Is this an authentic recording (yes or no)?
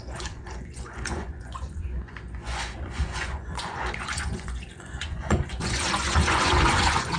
no